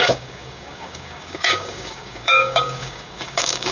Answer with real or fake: fake